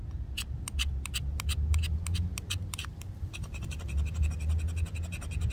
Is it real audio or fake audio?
real